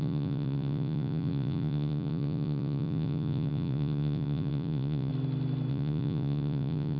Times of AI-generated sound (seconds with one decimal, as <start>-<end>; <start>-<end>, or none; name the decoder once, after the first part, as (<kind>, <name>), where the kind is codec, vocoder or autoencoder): 0.0-5.1 (vocoder, Vocos); 5.7-7.0